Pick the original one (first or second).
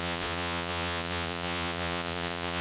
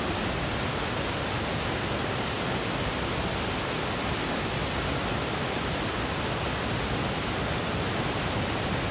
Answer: second